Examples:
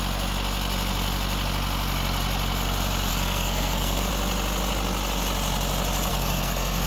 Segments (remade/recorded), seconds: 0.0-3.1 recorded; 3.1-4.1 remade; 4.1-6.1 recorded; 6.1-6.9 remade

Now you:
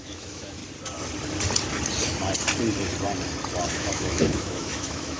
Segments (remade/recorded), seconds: 0.0-0.6 remade; 0.6-3.7 recorded; 3.7-5.2 remade

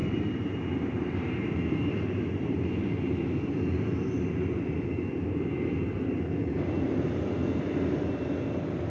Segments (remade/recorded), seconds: 0.0-3.0 remade; 3.0-8.9 recorded

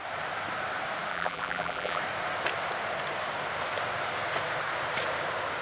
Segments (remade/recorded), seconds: 0.0-1.1 recorded; 1.1-2.0 remade; 2.0-5.6 recorded

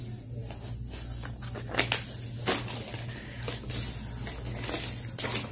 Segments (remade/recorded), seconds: 0.0-5.5 recorded

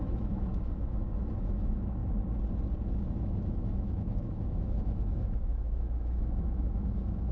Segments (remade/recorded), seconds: 0.0-2.0 remade; 2.0-2.8 recorded; 2.8-7.3 remade

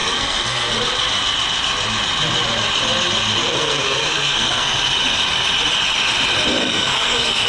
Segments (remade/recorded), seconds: 0.0-0.7 remade; 0.7-3.4 recorded; 3.4-4.8 remade; 4.8-6.6 recorded; 6.6-7.5 remade